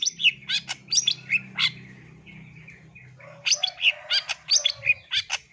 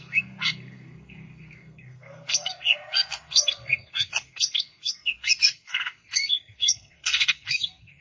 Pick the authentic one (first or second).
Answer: first